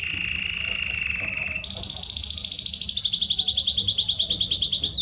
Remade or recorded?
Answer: recorded